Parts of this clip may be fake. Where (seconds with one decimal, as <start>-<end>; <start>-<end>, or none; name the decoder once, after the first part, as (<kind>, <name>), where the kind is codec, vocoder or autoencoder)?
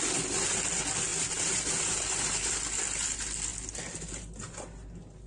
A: none